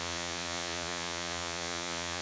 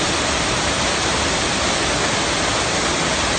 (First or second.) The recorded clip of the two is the second